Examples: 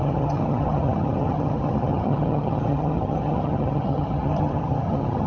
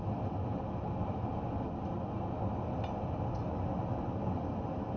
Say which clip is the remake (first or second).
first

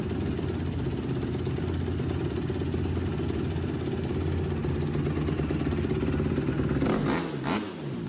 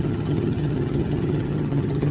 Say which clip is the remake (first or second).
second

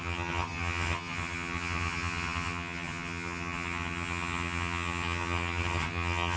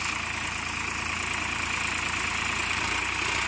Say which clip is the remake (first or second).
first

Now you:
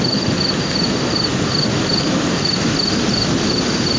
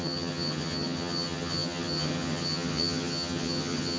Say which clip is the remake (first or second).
second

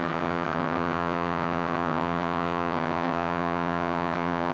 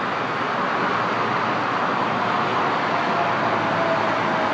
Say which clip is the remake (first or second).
first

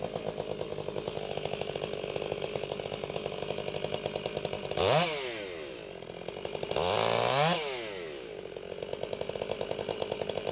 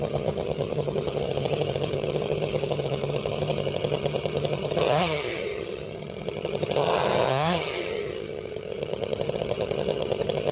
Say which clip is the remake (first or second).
second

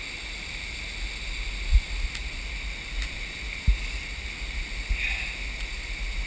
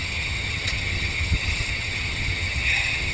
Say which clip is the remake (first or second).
second